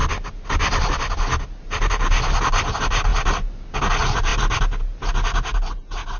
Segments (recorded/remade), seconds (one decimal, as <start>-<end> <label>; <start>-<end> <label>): 0.0-6.2 recorded